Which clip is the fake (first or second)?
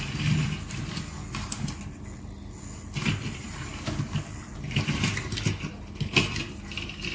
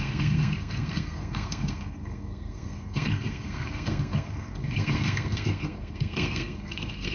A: second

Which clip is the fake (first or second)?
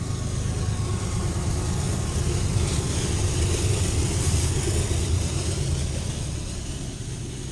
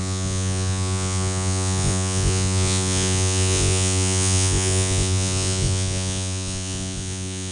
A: second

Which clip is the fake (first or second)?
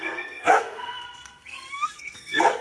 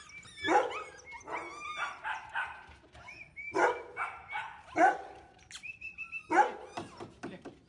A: first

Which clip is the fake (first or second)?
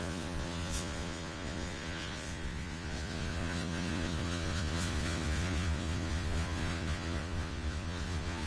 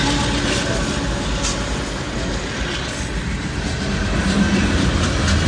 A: first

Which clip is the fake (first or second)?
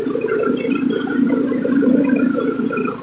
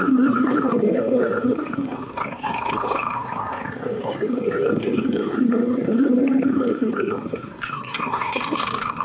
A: second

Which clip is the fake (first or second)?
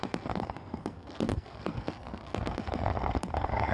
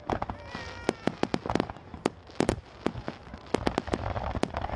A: first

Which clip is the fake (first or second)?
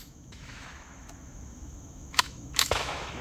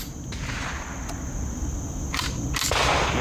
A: first